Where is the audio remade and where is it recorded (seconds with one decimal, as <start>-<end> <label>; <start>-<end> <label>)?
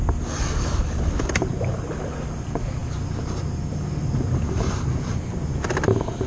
0.0-6.3 recorded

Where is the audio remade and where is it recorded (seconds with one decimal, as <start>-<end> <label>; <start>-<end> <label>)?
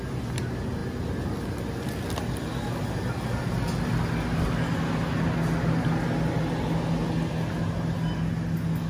0.0-8.9 recorded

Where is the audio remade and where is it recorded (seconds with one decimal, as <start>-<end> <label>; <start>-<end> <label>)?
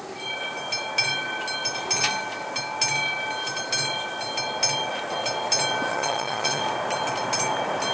0.0-5.9 recorded; 5.9-6.6 remade; 6.6-7.9 recorded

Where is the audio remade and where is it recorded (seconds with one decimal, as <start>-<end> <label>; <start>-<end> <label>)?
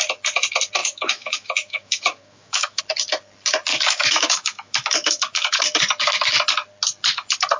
0.0-0.8 recorded; 0.8-2.8 remade; 2.8-3.7 recorded; 3.7-5.6 remade; 5.6-7.6 recorded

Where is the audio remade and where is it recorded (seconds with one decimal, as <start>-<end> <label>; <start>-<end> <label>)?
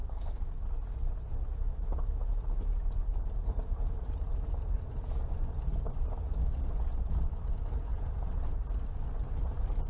0.0-9.9 recorded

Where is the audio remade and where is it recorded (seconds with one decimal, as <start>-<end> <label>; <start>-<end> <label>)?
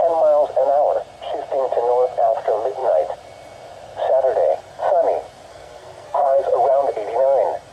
0.0-5.5 recorded; 5.5-6.4 remade; 6.4-7.7 recorded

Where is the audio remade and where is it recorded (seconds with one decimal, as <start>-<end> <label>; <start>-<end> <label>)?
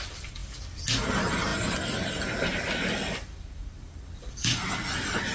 0.0-0.4 remade; 0.4-1.1 recorded; 1.1-5.3 remade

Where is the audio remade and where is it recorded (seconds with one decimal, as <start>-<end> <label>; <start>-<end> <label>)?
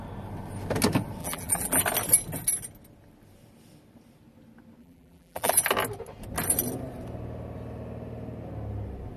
0.0-1.2 recorded; 1.2-1.8 remade; 1.8-4.8 recorded; 4.8-5.6 remade; 5.6-9.2 recorded